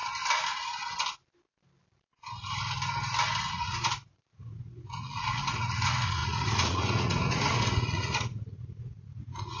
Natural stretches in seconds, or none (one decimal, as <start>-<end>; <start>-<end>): 0.0-3.5